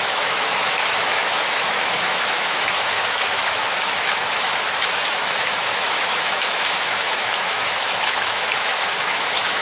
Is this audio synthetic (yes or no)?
yes